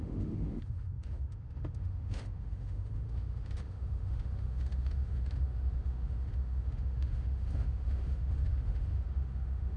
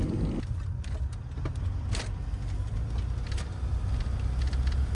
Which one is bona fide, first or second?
second